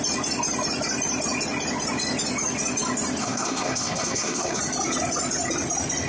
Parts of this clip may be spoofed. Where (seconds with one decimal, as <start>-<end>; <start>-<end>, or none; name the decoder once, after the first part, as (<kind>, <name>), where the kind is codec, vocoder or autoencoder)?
3.2-4.6 (codec, SNAC)

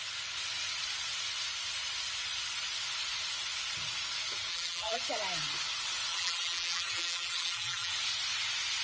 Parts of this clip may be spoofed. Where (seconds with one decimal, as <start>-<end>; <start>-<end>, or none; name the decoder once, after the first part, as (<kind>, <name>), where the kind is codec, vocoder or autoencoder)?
4.5-5.0 (vocoder, BigVGAN v2); 6.1-7.9

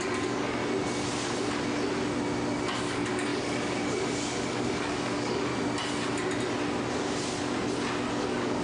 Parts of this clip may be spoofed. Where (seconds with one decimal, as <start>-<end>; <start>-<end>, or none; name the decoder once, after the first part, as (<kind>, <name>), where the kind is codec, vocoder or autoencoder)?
0.0-0.6 (codec, DAC); 2.8-5.5; 8.1-8.6

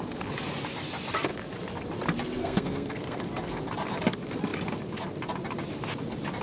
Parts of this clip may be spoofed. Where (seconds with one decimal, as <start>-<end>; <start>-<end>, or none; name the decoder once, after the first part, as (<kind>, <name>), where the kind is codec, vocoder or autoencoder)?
2.4-3.2 (codec, SNAC)

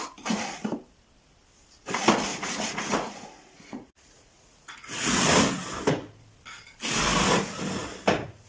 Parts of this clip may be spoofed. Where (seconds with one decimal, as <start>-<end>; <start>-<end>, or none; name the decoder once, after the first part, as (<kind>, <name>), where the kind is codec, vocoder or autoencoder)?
2.3-5.2 (vocoder, Vocos)

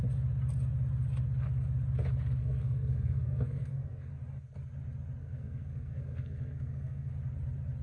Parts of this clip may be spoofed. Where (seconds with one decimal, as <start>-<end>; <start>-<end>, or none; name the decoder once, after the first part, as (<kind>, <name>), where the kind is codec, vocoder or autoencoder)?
2.4-4.1 (codec, SNAC); 5.2-7.1

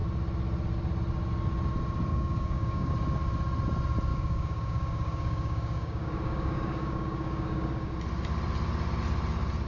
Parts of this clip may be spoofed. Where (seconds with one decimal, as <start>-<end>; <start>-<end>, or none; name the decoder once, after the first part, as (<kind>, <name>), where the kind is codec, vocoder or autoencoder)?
2.1-2.9 (codec, DAC); 4.1-7.9

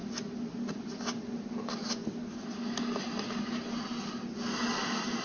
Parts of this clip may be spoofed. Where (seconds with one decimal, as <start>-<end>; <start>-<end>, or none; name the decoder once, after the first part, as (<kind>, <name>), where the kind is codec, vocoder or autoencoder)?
none